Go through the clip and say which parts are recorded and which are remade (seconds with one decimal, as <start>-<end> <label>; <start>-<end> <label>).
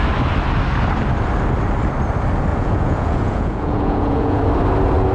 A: 0.0-2.5 recorded; 2.5-4.4 remade; 4.4-5.1 recorded